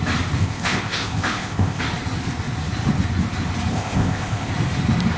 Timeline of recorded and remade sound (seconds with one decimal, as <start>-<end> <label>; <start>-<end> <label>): 0.0-0.4 recorded; 0.4-1.8 remade; 1.8-3.7 recorded; 3.7-4.5 remade; 4.5-5.2 recorded

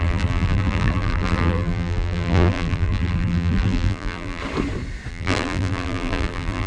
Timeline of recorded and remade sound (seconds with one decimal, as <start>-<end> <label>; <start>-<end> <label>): 0.0-4.4 remade; 4.4-5.1 recorded; 5.1-6.7 remade

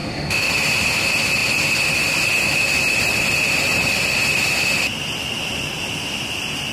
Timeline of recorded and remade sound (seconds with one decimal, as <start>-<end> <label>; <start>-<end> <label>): 0.0-0.5 remade; 0.5-6.7 recorded

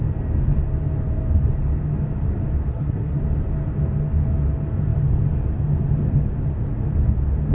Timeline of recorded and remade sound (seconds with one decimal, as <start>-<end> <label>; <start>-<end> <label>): 0.0-2.7 recorded; 2.7-3.2 remade; 3.2-7.5 recorded

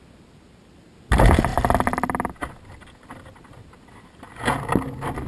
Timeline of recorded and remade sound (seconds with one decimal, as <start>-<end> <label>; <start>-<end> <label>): 0.0-5.3 recorded

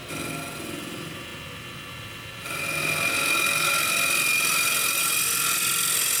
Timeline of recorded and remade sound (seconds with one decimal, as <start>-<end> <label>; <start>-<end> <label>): 0.0-6.2 recorded